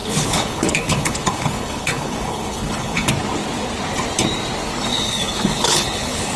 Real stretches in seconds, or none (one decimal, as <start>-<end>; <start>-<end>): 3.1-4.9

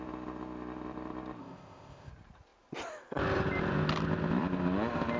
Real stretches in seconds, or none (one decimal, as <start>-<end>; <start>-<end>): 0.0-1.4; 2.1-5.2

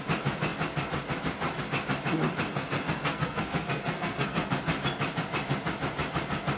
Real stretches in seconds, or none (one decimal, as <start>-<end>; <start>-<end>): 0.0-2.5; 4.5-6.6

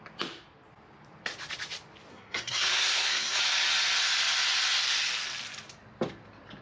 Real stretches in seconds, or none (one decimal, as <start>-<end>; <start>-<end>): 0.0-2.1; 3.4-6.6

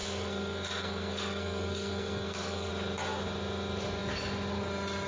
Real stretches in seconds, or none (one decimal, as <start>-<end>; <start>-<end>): 2.7-5.1